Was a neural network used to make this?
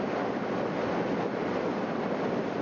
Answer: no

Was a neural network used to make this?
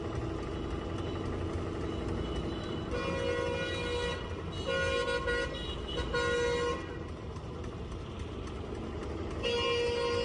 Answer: no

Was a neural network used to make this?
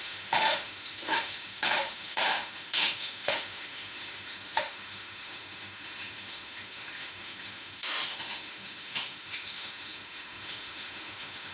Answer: yes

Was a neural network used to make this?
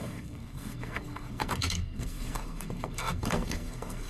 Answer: yes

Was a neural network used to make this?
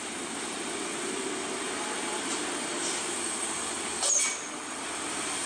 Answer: yes